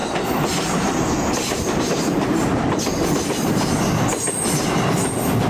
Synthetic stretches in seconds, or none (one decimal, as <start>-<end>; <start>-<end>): none